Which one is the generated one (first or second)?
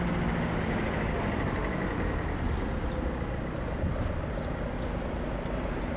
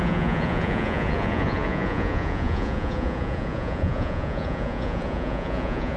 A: second